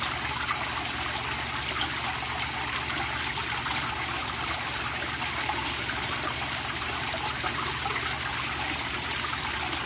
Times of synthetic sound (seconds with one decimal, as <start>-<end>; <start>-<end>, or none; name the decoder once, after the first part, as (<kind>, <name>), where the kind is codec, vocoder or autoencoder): 4.2-7.7 (vocoder, BigVGAN v2)